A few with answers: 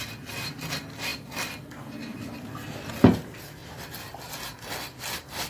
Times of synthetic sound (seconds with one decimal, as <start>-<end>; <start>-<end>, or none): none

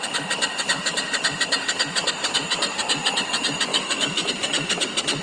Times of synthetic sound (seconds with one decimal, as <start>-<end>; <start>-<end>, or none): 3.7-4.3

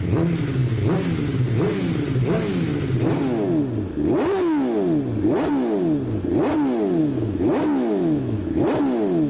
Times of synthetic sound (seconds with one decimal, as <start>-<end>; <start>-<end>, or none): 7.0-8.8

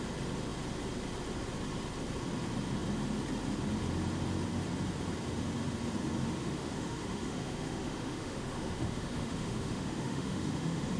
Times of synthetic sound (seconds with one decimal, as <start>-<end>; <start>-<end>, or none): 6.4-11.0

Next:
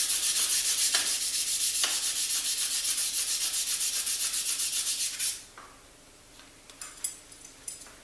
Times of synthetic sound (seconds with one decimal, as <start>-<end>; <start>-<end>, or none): none